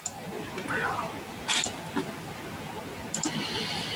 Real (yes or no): yes